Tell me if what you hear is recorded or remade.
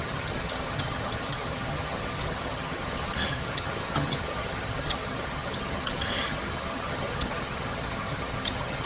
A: remade